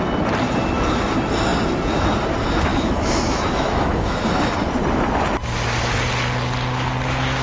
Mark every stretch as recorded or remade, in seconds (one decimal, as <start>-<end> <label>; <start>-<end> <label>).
0.0-2.7 recorded; 2.7-4.3 remade; 4.3-7.4 recorded